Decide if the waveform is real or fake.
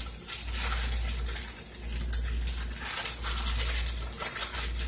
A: real